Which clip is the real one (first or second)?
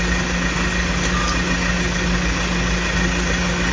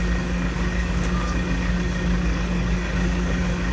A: first